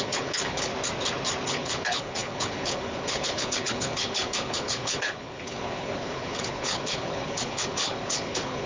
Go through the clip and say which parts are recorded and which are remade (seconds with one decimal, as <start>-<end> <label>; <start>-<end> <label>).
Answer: 0.0-0.7 remade; 0.7-1.5 recorded; 1.5-8.7 remade